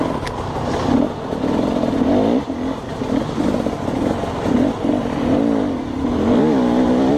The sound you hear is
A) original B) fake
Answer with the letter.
A